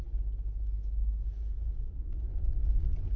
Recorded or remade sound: recorded